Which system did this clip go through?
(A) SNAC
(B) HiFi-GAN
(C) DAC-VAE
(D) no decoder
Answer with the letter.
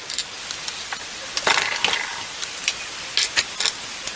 D